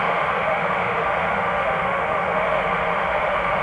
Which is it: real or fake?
fake